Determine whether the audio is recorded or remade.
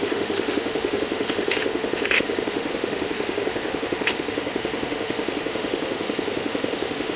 remade